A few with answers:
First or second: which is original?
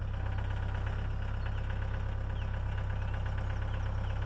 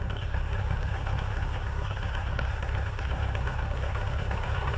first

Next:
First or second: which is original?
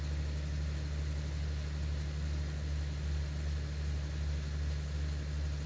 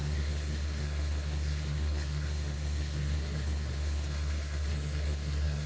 first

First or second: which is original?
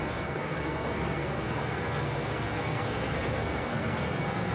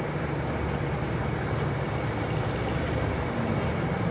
second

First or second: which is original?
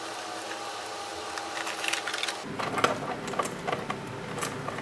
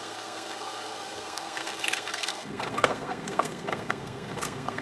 first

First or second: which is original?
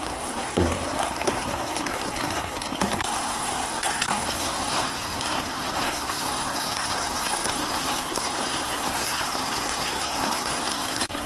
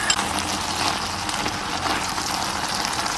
second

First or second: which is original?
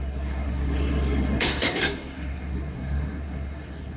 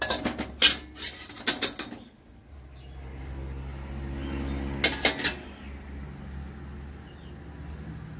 second